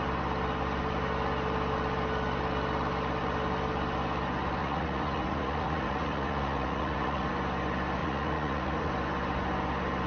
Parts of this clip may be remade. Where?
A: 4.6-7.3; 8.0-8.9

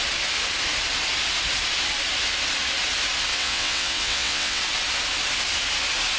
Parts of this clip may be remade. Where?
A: 3.3-4.6

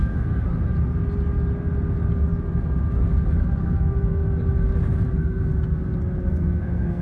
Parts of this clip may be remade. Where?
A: 0.0-0.5; 3.6-4.2; 5.1-5.5; 6.3-7.0